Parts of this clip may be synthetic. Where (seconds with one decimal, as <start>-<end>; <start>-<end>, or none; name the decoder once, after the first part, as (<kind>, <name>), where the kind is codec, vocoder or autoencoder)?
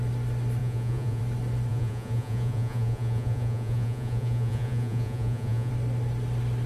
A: 0.6-1.2 (vocoder, Vocos); 1.7-5.7